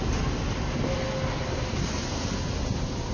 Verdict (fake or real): real